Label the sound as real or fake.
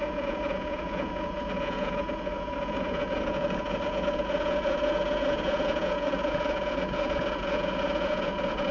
fake